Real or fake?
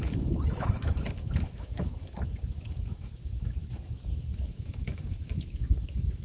fake